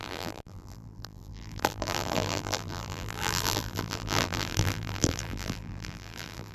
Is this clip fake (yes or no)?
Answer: yes